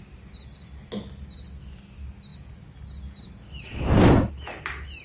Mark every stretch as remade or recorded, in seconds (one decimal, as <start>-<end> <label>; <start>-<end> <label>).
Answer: 0.0-5.0 recorded